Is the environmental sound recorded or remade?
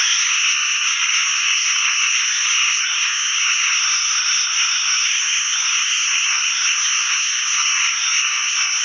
remade